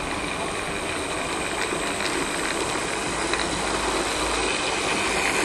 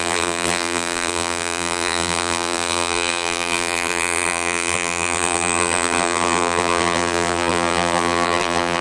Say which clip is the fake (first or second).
second